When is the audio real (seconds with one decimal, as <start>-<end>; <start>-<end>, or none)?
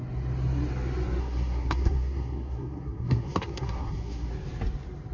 0.0-1.2; 4.3-5.1